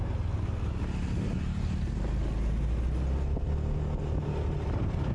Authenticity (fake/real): real